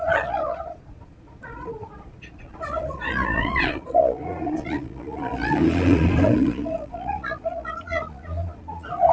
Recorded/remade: remade